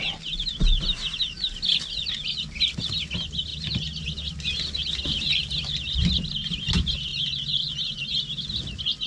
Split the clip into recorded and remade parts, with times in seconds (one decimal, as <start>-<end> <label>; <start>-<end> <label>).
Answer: 0.0-9.1 recorded